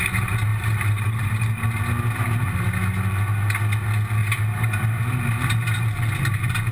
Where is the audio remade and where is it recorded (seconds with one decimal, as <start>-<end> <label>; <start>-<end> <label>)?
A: 0.0-0.5 recorded; 0.5-1.5 remade; 1.5-4.2 recorded; 4.2-5.0 remade; 5.0-6.7 recorded